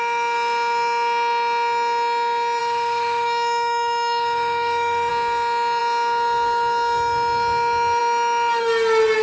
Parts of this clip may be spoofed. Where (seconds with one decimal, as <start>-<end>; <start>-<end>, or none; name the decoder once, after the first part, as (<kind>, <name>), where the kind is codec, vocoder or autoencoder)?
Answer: 2.6-5.1 (autoencoder, DAC-VAE)